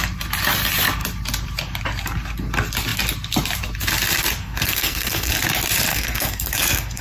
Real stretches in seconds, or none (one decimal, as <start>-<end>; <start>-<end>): 0.0-4.4; 5.3-5.9